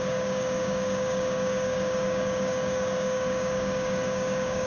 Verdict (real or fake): fake